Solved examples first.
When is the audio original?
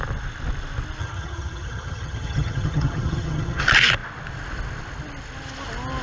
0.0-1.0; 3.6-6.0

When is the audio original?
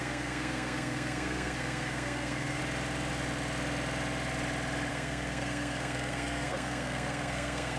2.6-4.9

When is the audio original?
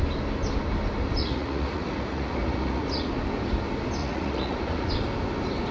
0.0-1.2; 3.1-4.0; 4.9-5.7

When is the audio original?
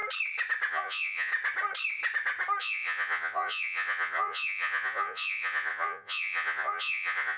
0.0-0.7; 1.3-2.6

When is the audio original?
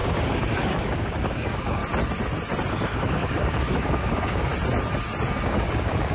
1.8-2.7; 4.5-5.3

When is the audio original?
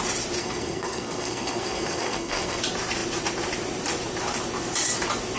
0.0-0.4; 2.6-5.4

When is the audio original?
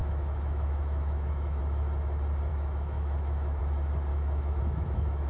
1.6-2.5; 3.6-4.1